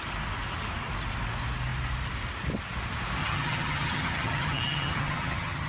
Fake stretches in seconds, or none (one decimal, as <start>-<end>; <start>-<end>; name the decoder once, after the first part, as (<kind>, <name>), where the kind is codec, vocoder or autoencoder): 3.2-5.7 (vocoder, HiFi-GAN)

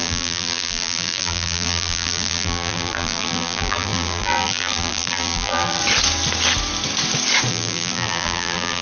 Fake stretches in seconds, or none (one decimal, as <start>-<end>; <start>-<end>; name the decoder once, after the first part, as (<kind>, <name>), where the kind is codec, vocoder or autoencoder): 0.0-5.8 (vocoder, BigVGAN v2); 7.5-8.8

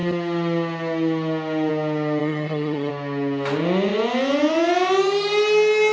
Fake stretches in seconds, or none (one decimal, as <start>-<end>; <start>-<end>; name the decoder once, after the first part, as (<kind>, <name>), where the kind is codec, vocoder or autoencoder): 2.2-2.9 (vocoder, HiFi-GAN)